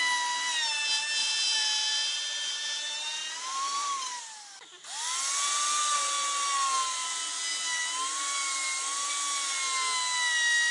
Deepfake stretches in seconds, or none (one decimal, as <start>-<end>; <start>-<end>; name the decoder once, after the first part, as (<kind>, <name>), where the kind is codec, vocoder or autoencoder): 1.2-4.2 (vocoder, BigVGAN v2)